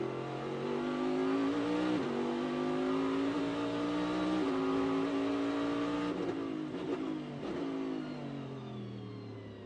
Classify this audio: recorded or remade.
recorded